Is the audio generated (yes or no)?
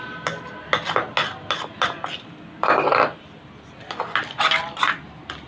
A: no